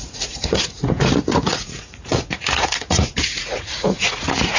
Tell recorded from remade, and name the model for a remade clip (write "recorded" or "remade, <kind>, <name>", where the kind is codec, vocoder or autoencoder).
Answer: remade, vocoder, Vocos